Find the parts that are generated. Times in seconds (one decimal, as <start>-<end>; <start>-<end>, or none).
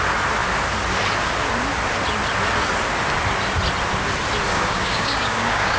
4.5-5.8